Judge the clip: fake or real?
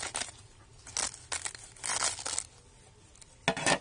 real